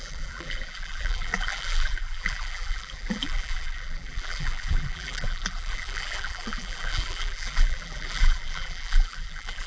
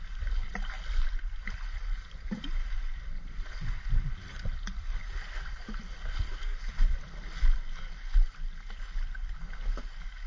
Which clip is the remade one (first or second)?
first